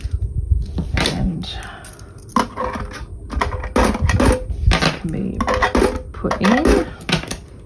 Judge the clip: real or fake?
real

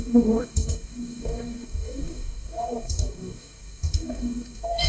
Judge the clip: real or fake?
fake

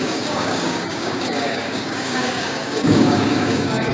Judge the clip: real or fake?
fake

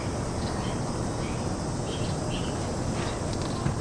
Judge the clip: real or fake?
real